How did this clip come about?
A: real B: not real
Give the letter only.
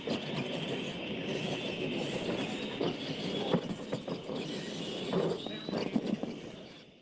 A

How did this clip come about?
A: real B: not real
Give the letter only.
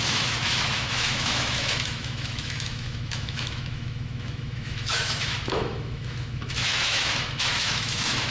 B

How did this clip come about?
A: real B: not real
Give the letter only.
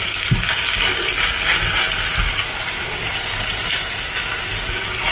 A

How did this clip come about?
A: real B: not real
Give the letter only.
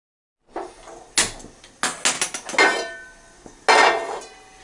A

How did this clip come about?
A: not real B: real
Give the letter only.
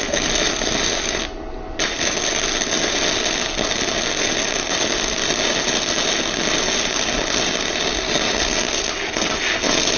B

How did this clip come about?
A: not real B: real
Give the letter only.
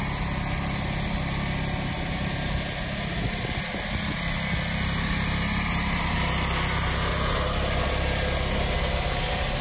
B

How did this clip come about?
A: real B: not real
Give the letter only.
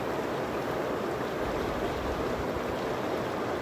A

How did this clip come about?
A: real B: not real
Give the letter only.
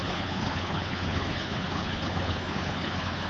B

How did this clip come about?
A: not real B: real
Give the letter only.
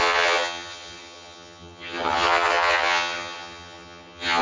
A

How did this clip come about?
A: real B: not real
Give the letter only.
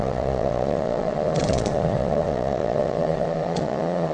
B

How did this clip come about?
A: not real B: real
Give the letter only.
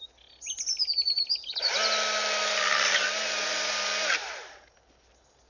B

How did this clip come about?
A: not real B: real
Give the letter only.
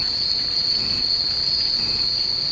B